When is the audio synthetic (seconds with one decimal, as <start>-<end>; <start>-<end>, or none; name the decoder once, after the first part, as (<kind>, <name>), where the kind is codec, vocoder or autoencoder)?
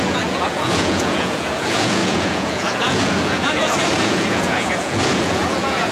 0.0-5.9 (vocoder, Vocos)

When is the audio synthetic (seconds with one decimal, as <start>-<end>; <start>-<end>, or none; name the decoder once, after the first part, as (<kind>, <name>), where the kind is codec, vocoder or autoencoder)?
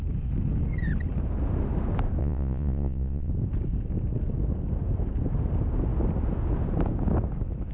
2.2-3.3 (vocoder, Vocos)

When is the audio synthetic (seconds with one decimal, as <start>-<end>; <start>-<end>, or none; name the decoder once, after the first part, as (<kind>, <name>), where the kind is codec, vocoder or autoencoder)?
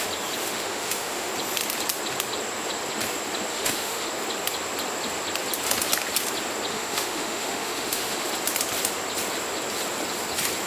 0.4-1.3 (autoencoder, DAC-VAE); 3.5-4.1; 6.7-8.3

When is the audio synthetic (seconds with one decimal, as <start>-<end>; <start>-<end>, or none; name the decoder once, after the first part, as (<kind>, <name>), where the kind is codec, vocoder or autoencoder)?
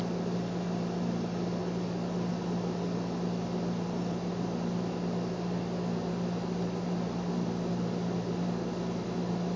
none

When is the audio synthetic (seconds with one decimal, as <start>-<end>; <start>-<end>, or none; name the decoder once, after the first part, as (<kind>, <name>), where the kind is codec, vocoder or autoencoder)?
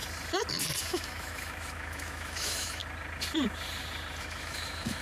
0.8-2.8 (autoencoder, DAC-VAE); 4.2-5.0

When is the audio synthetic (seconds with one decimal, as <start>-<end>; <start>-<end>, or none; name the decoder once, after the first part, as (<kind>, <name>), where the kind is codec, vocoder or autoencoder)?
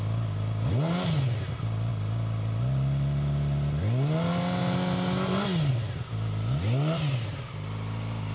none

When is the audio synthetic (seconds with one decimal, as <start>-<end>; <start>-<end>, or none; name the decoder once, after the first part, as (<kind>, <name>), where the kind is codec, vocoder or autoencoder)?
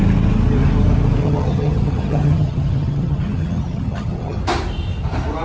1.2-4.4 (vocoder, HiFi-GAN)